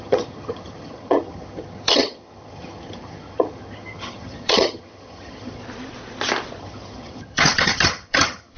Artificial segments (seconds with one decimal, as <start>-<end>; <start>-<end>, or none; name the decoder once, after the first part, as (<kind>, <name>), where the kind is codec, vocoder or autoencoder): 0.0-5.6 (vocoder, HiFi-GAN); 6.6-8.6

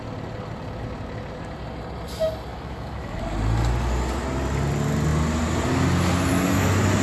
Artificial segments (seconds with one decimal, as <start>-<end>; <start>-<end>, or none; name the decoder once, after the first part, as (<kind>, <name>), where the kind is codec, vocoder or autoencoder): 2.5-3.2 (autoencoder, DAC-VAE)

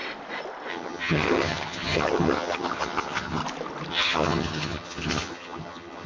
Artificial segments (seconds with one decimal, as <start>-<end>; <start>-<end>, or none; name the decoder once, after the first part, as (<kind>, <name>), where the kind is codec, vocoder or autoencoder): 0.7-3.4 (vocoder, HiFi-GAN); 3.9-6.1

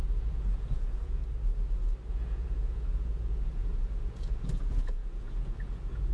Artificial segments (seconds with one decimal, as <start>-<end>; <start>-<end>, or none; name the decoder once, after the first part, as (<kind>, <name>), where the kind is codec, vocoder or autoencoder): 0.0-1.2 (vocoder, Vocos); 2.1-6.1

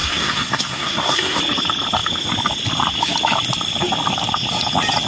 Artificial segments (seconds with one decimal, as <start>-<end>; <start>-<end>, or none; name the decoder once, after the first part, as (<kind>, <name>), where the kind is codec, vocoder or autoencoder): 0.0-1.4 (codec, SNAC)